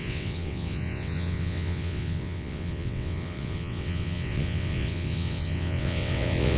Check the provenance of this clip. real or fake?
fake